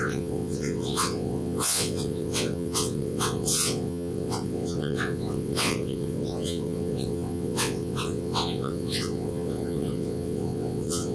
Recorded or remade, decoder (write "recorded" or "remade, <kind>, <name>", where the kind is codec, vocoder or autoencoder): remade, vocoder, WaveNeXt